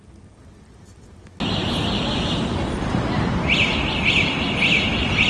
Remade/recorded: recorded